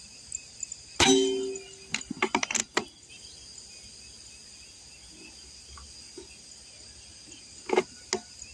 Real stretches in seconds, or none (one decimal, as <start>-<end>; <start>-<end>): 0.0-8.5